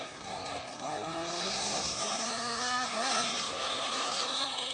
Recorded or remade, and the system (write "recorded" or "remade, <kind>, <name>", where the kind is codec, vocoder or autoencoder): remade, codec, SNAC